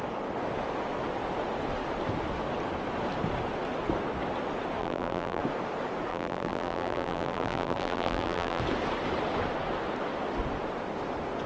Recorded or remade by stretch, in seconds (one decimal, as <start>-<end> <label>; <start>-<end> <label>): 0.0-4.8 recorded; 4.8-5.4 remade; 5.4-6.1 recorded; 6.1-8.6 remade; 8.6-11.5 recorded